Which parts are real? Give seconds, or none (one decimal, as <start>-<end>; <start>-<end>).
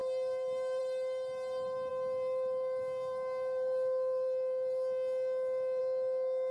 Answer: 0.8-1.9; 5.8-6.5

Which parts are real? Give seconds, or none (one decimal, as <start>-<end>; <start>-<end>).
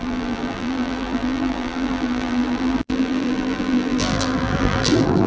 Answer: none